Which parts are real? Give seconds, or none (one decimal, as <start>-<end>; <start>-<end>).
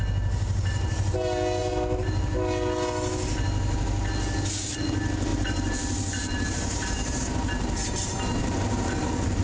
0.0-1.6; 2.2-5.3; 7.2-7.8